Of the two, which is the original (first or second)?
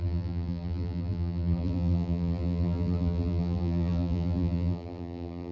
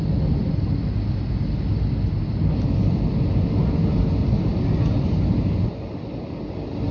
second